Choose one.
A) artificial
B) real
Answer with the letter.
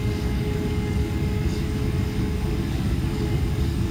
A